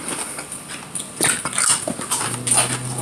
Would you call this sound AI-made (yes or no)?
no